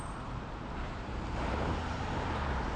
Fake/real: fake